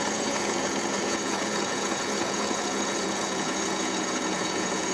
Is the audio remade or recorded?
remade